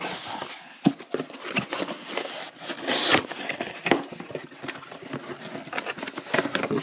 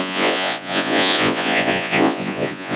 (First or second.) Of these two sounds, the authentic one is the first